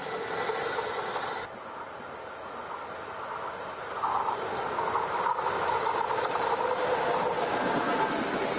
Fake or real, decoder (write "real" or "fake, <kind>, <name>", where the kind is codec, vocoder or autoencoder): real